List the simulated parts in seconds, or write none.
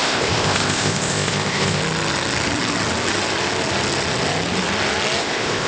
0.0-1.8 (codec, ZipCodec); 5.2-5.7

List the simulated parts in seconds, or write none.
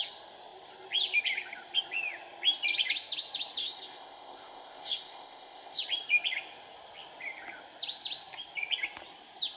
3.6-5.8 (codec, ZipCodec)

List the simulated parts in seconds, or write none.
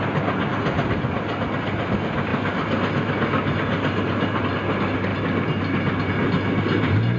none